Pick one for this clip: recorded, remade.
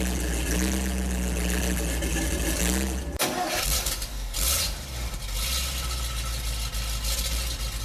recorded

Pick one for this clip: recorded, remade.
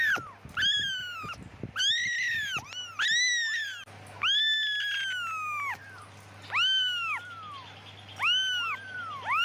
recorded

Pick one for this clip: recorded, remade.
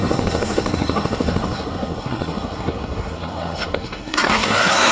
remade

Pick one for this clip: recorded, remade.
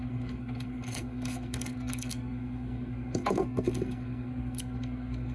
remade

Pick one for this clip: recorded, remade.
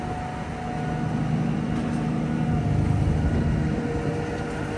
recorded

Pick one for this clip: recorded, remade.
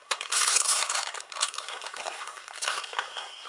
remade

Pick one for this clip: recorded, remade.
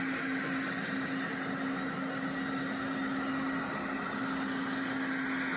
recorded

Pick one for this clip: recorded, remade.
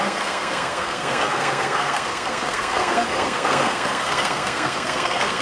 remade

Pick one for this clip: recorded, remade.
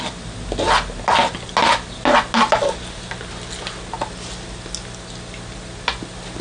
recorded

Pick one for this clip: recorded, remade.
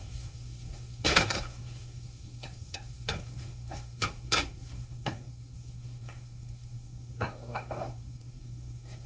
remade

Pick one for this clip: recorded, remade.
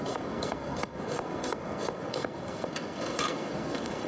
remade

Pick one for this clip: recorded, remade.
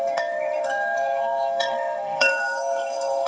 remade